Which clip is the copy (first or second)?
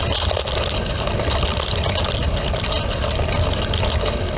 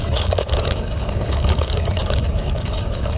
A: second